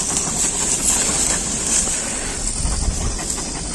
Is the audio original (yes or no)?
yes